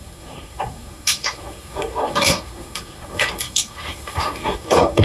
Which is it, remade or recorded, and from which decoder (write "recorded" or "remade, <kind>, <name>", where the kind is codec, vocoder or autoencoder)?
remade, codec, SNAC